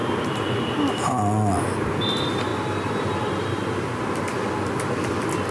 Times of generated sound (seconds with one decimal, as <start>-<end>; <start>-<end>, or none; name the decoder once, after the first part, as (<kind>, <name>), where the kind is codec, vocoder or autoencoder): none